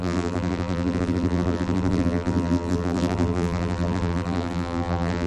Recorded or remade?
remade